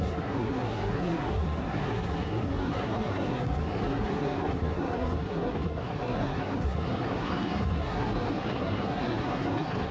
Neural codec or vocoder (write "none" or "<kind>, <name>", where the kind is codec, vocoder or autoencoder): codec, SNAC